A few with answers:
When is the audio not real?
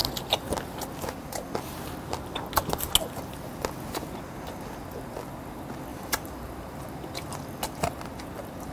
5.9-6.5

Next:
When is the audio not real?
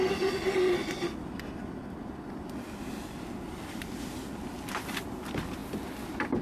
none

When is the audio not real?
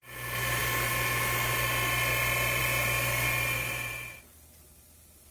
0.0-0.6; 2.6-5.3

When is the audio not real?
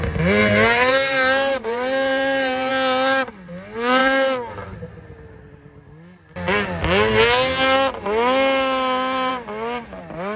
0.4-2.7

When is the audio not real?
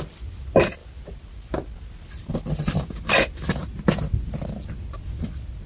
none